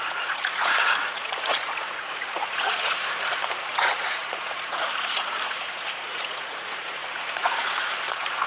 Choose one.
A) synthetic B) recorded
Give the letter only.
A